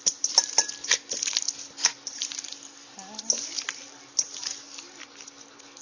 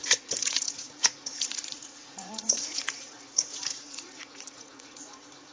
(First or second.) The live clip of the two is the first